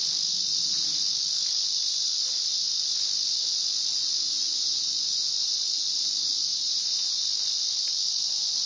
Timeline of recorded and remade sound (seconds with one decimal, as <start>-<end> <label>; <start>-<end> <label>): 0.0-4.4 recorded; 4.4-4.9 remade; 4.9-6.5 recorded; 6.5-7.2 remade; 7.2-8.7 recorded